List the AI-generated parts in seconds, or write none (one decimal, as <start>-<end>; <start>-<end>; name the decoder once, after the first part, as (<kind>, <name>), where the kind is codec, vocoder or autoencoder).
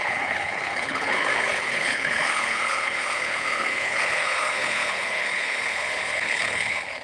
0.0-7.0 (codec, HILCodec)